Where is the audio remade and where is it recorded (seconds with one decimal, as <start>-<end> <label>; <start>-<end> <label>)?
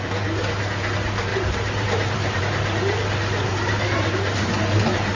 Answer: 0.0-1.3 recorded; 1.3-2.4 remade; 2.4-3.5 recorded; 3.5-4.5 remade; 4.5-5.1 recorded